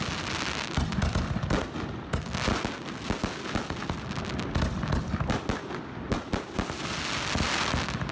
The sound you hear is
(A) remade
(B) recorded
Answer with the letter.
B